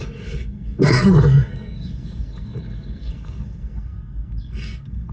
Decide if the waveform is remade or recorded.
remade